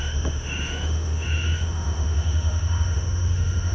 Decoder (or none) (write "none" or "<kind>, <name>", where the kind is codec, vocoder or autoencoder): autoencoder, DAC-VAE